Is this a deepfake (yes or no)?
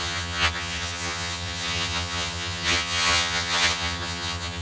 yes